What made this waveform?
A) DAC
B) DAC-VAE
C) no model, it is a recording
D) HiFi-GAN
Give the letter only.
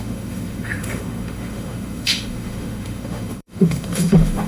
B